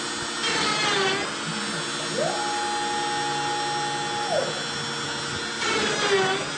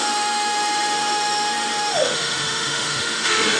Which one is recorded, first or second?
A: first